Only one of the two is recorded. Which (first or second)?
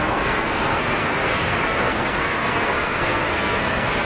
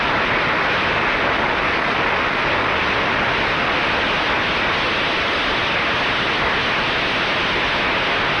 second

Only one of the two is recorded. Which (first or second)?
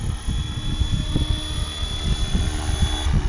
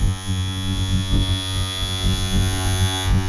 first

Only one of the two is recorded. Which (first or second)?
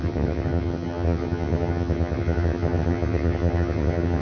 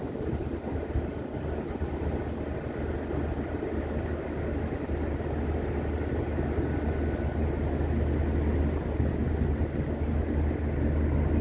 second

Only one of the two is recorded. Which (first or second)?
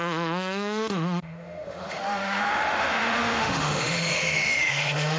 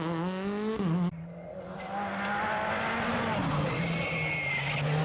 second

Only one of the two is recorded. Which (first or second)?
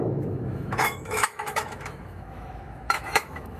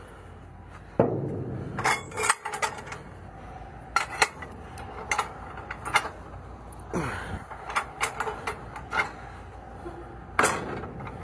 second